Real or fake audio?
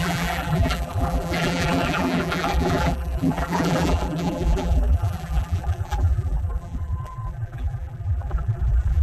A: fake